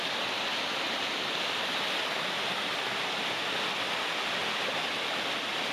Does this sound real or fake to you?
real